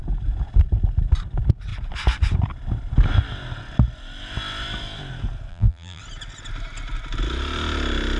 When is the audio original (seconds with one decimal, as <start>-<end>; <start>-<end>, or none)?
0.0-5.5; 6.0-8.2